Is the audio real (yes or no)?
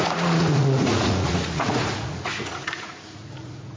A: no